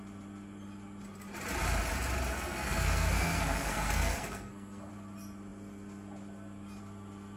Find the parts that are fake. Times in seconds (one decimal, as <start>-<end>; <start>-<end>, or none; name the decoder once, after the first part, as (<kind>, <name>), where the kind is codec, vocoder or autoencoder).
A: 2.3-4.9 (codec, SNAC)